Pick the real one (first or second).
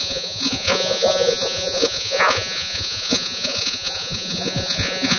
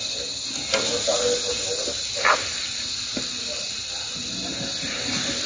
second